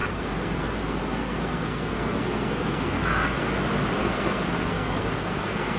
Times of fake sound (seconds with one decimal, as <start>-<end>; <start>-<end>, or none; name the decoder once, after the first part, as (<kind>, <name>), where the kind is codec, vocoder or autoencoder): 0.0-3.5 (codec, SNAC); 4.0-5.8